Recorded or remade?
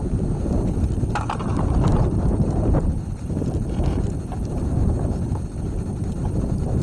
remade